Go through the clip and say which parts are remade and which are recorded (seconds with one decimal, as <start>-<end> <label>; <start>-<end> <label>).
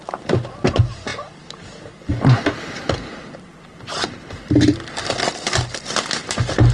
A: 0.0-6.7 recorded